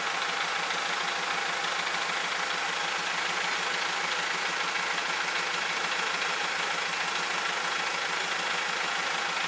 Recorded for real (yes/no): yes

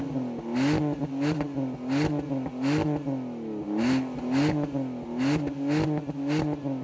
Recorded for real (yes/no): yes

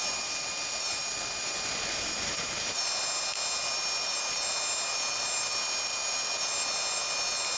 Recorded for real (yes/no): yes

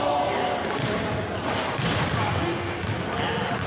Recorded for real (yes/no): yes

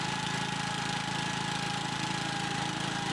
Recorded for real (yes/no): yes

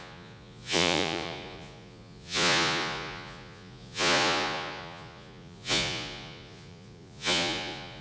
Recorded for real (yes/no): no